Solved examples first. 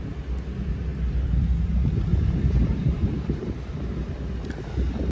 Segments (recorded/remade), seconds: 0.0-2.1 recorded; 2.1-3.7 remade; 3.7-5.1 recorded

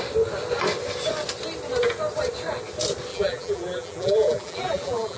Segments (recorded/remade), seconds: 0.0-3.1 recorded; 3.1-5.2 remade

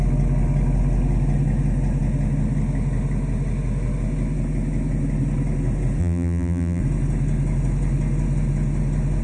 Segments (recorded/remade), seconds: 0.0-6.0 recorded; 6.0-6.8 remade; 6.8-9.2 recorded

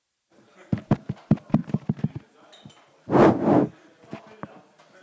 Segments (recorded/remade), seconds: 0.0-1.0 remade; 1.0-5.0 recorded

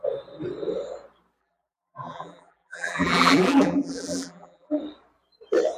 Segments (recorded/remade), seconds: 0.0-1.4 recorded; 1.4-4.8 remade; 4.8-5.8 recorded

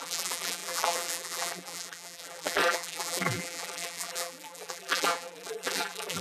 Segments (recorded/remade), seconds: 0.0-6.2 remade

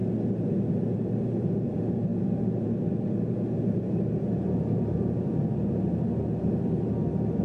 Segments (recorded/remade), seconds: 0.0-0.7 recorded; 0.7-7.4 remade

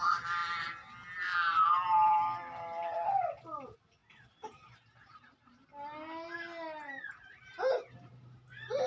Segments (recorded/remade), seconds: 0.0-8.9 recorded